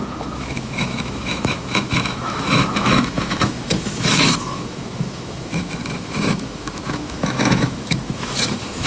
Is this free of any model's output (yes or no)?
no